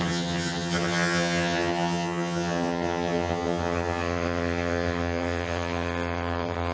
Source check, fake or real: fake